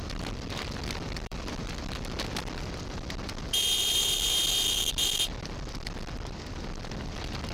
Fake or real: fake